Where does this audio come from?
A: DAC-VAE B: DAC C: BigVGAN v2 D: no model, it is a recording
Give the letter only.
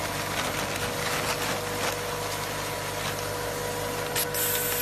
D